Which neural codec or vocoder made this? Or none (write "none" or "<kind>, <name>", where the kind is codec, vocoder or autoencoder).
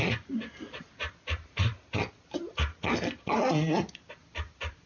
none